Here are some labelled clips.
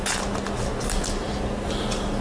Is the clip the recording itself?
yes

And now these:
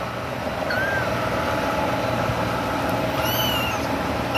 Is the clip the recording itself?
yes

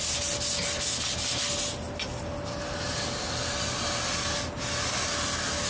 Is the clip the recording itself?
yes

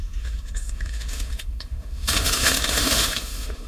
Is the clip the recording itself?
no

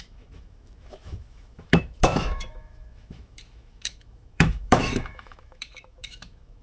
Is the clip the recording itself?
no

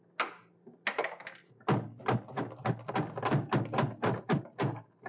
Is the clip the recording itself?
yes